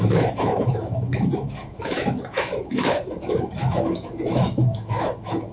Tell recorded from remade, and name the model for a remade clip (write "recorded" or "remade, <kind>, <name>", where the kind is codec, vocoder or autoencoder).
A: remade, autoencoder, DAC-VAE